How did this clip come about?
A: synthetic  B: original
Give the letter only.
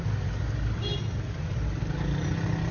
B